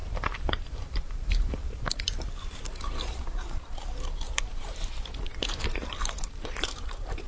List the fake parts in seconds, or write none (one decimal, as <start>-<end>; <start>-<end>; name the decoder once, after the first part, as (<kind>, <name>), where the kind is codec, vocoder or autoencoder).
0.0-7.3 (vocoder, BigVGAN v2)